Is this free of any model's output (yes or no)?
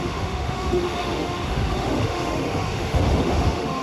no